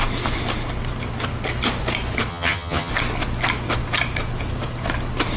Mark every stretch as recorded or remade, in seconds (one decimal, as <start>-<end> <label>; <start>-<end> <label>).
0.0-2.3 recorded; 2.3-2.9 remade; 2.9-5.4 recorded